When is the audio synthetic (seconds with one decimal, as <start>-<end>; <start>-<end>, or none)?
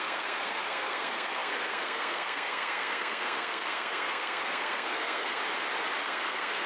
0.0-5.4; 6.0-6.7